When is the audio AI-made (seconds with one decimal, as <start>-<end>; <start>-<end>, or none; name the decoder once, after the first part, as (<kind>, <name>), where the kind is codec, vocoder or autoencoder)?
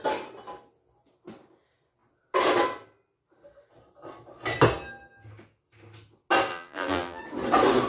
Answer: 6.5-7.2 (vocoder, BigVGAN v2)